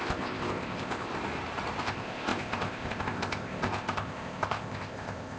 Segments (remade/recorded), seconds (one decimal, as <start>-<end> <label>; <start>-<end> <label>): 0.0-1.1 remade; 1.1-1.8 recorded; 1.8-5.4 remade